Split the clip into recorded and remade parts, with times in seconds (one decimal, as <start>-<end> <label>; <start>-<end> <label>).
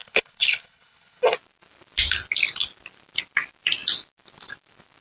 0.0-1.2 remade; 1.2-5.0 recorded